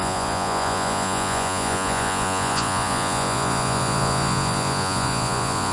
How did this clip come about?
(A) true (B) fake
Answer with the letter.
B